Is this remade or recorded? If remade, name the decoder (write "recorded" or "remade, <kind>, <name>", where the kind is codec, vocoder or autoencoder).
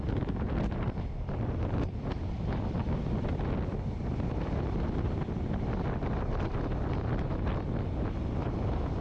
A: recorded